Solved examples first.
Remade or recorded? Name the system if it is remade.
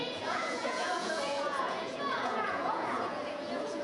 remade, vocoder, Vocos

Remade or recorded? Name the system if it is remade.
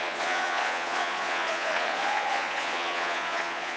remade, vocoder, Vocos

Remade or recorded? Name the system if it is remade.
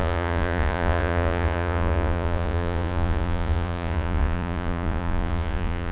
remade, vocoder, Vocos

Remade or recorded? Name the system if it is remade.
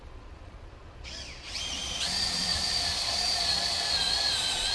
remade, vocoder, Vocos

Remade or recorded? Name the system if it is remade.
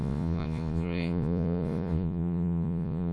remade, vocoder, Vocos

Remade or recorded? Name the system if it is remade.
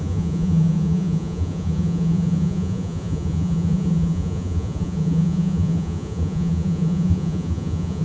remade, vocoder, Vocos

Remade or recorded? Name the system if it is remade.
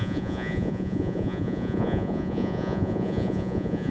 remade, vocoder, Vocos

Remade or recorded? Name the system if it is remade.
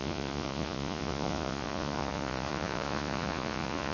remade, vocoder, Vocos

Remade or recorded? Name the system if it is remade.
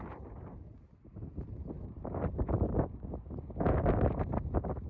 recorded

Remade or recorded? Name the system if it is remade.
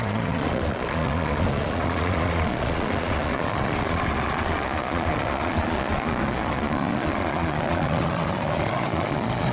remade, vocoder, Vocos